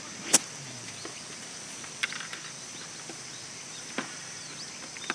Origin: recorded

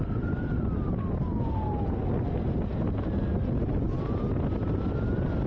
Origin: recorded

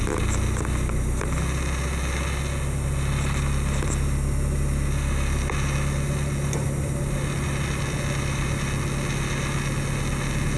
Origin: recorded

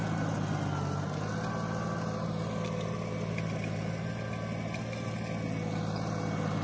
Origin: recorded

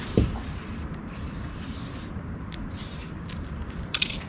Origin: remade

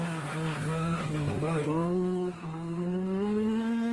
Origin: remade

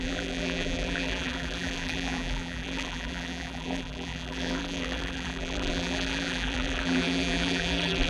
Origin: remade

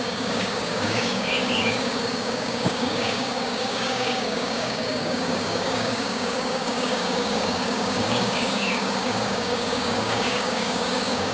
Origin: remade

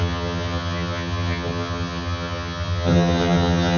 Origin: remade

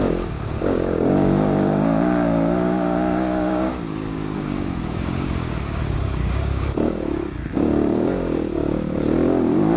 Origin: remade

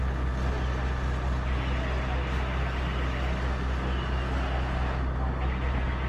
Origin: recorded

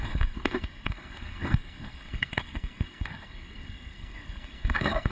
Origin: remade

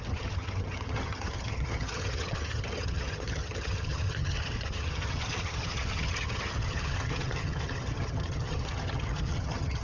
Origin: remade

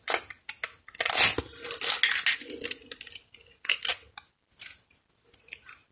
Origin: recorded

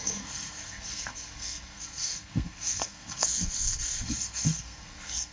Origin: remade